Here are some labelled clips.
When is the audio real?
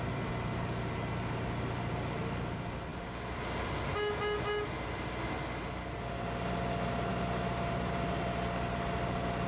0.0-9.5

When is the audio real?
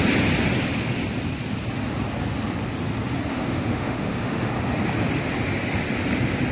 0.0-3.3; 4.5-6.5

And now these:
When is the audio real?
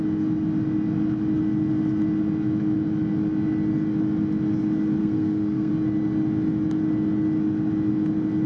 0.0-5.0; 5.7-8.5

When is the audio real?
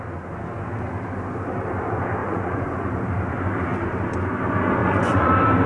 0.0-2.2; 2.9-4.8; 5.3-5.7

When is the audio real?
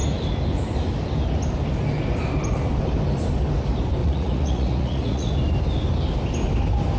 0.0-4.0; 5.3-7.0